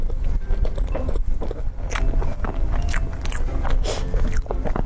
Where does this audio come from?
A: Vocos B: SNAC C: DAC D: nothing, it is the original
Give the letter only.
D